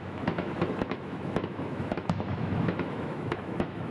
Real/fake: fake